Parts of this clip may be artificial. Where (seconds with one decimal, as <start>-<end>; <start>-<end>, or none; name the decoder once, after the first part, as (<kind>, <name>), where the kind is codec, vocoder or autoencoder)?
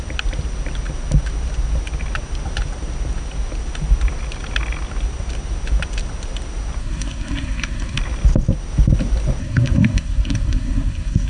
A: 6.8-8.0 (codec, SNAC); 9.4-11.3